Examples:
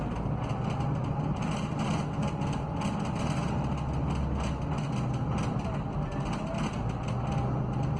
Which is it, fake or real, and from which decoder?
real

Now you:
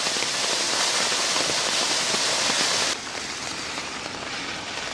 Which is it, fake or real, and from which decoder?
fake, vocoder, BigVGAN v2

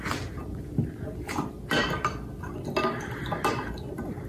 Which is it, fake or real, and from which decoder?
real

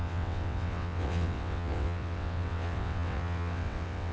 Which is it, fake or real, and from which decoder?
fake, vocoder, WaveNeXt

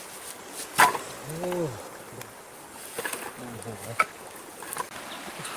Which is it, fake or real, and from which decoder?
real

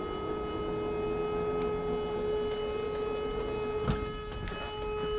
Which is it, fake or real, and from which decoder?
real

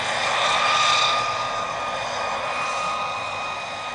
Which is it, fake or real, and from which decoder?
real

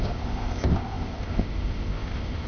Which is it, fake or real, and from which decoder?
fake, codec, ZipCodec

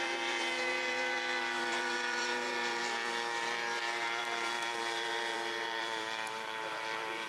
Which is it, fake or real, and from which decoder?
fake, vocoder, BigVGAN v2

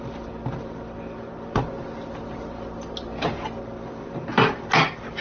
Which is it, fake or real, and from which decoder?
real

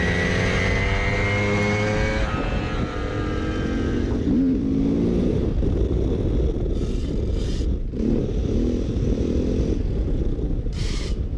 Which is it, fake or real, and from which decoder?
real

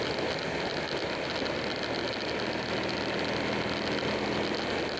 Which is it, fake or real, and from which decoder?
real